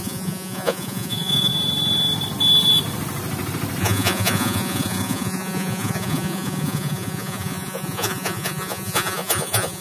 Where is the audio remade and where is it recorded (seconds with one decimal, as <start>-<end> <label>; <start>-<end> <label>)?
0.0-1.5 remade; 1.5-3.8 recorded; 3.8-9.8 remade